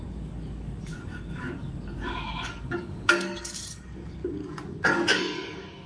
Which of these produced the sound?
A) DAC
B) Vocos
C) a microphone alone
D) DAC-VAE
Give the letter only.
A